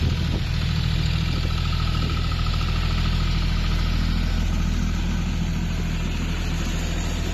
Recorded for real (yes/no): yes